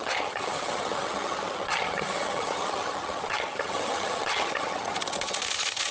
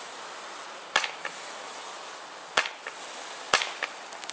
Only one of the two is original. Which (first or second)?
second